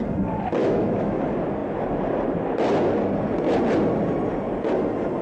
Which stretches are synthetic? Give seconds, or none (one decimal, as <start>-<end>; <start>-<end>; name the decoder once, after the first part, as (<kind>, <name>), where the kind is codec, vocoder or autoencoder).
0.6-1.2 (autoencoder, DAC-VAE)